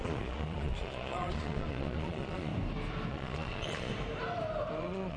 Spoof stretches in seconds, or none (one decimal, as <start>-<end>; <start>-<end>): 0.0-2.5; 3.1-3.9; 4.8-5.2